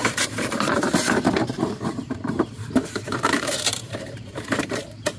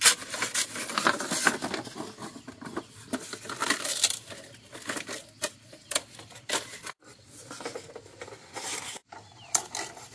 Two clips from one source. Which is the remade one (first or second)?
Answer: first